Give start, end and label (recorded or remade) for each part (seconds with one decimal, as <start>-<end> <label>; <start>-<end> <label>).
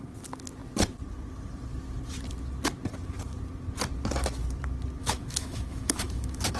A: 0.0-5.0 recorded; 5.0-6.6 remade